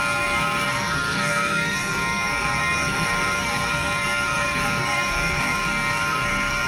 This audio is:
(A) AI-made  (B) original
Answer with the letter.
A